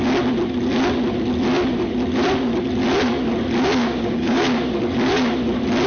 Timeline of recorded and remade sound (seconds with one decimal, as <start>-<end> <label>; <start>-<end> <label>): 0.0-3.8 recorded; 3.8-4.4 remade; 4.4-5.9 recorded